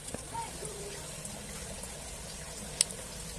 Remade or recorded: recorded